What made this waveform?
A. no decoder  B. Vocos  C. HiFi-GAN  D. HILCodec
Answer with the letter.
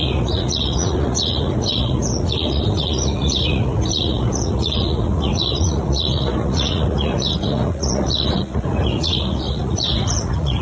B